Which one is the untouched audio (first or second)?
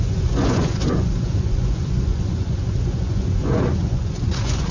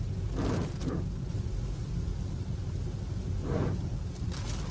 second